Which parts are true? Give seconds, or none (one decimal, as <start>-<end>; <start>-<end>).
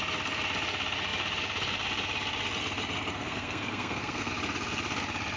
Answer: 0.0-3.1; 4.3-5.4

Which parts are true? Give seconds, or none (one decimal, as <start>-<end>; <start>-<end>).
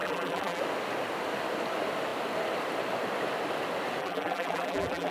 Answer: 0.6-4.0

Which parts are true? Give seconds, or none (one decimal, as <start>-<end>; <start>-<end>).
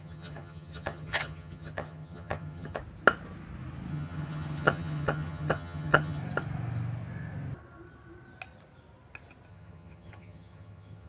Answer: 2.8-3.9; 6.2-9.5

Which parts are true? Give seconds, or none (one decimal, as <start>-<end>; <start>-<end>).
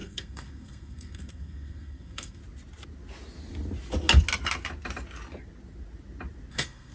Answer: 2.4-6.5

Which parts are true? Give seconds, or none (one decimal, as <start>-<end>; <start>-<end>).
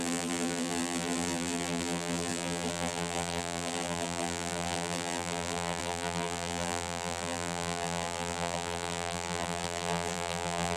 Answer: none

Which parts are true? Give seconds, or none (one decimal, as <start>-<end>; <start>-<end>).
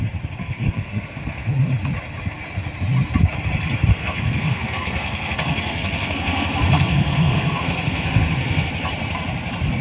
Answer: 0.0-0.4; 1.5-3.9; 8.7-9.8